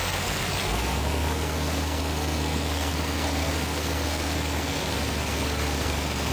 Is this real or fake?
fake